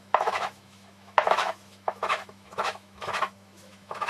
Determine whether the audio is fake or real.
fake